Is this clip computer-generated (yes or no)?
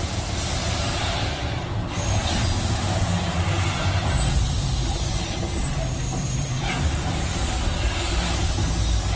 no